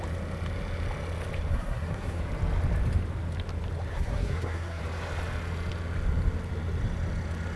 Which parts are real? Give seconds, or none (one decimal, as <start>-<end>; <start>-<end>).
0.0-1.5; 2.2-3.9; 4.8-7.6